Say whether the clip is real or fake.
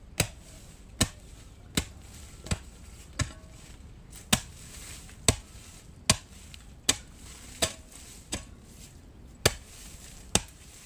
real